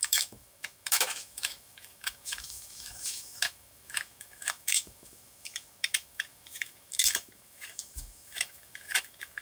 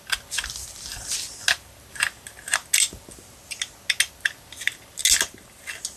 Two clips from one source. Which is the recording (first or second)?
second